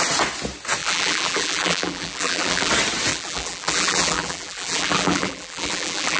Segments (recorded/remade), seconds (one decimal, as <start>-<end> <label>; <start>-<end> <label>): 0.0-0.8 recorded; 0.8-2.7 remade; 2.7-3.1 recorded; 3.1-6.2 remade